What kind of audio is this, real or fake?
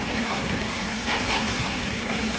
fake